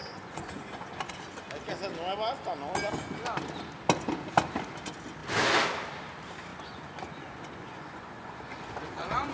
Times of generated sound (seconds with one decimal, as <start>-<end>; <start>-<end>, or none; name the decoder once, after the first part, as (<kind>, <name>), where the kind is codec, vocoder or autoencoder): 0.0-1.0 (vocoder, Vocos); 6.5-9.3